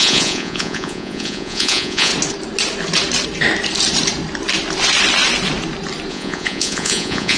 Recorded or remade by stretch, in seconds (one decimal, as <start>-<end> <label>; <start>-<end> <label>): 0.0-2.1 remade; 2.1-6.1 recorded; 6.1-7.4 remade